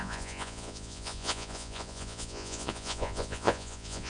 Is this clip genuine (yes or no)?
no